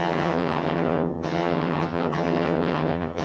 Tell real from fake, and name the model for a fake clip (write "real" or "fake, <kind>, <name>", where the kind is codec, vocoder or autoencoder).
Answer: fake, vocoder, HiFi-GAN